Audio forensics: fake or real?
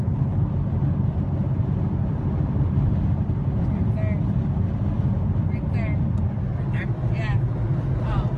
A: real